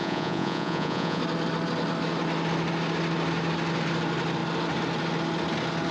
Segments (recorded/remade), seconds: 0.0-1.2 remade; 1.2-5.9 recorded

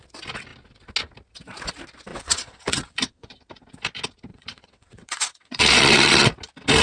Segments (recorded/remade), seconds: 0.0-2.1 recorded; 2.1-3.4 remade; 3.4-4.3 recorded; 4.3-6.3 remade; 6.3-6.8 recorded

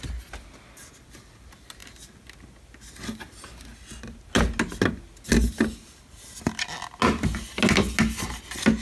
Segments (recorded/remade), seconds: 0.0-8.8 recorded

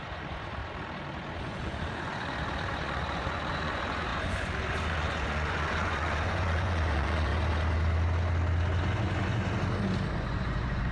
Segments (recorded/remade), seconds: 0.0-0.6 remade; 0.6-1.4 recorded; 1.4-7.3 remade; 7.3-10.1 recorded; 10.1-10.9 remade

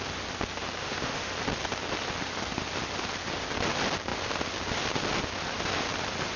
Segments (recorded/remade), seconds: 0.0-0.8 recorded; 0.8-1.3 remade; 1.3-6.4 recorded

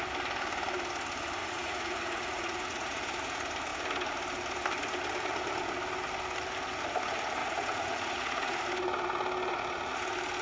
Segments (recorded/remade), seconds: 0.0-1.4 recorded; 1.4-3.0 remade; 3.0-7.4 recorded; 7.4-8.6 remade; 8.6-10.4 recorded